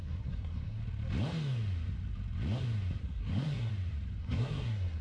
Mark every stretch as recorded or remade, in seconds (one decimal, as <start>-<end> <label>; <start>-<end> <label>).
0.0-0.8 remade; 0.8-3.0 recorded; 3.0-3.7 remade; 3.7-4.2 recorded; 4.2-5.0 remade